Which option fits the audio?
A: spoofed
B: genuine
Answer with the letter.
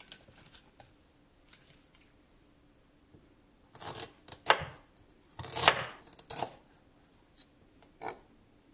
B